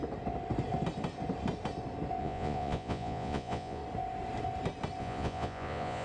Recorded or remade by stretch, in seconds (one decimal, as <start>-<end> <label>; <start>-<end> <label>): 0.0-2.2 recorded; 2.2-3.8 remade; 3.8-5.0 recorded; 5.0-6.0 remade